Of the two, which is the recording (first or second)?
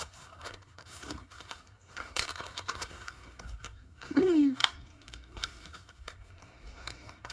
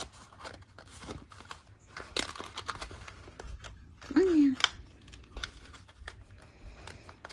second